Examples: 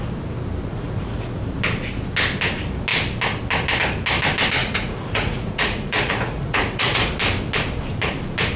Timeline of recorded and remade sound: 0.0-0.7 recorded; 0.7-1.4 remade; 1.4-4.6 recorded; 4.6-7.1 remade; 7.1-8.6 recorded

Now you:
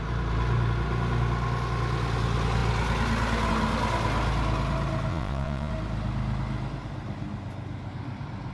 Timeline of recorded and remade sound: 0.0-5.1 recorded; 5.1-5.7 remade; 5.7-8.5 recorded

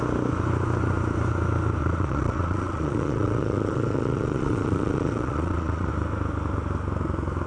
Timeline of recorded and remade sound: 0.0-1.8 recorded; 1.8-5.9 remade; 5.9-7.5 recorded

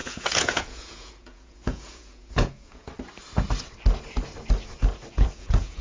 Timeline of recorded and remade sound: 0.0-2.9 remade; 2.9-5.1 recorded; 5.1-5.8 remade

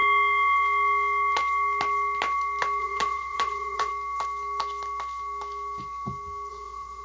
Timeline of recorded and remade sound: 0.0-2.8 recorded; 2.8-3.9 remade; 3.9-6.5 recorded; 6.5-7.0 remade

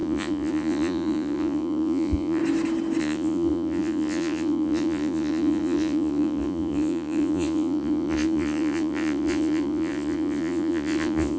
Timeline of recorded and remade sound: 0.0-2.4 remade; 2.4-3.0 recorded; 3.0-11.4 remade

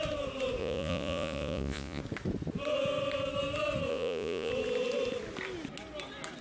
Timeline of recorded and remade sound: 0.0-0.6 recorded; 0.6-2.0 remade; 2.0-3.9 recorded; 3.9-4.5 remade; 4.5-6.4 recorded